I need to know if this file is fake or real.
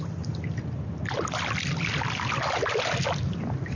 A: real